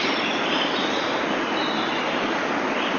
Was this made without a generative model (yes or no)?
yes